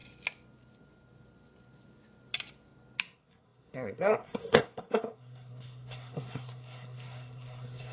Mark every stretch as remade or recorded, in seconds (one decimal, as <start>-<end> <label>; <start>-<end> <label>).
0.0-3.0 recorded; 3.0-7.9 remade